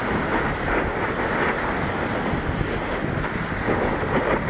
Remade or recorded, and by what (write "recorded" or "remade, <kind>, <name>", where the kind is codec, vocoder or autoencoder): recorded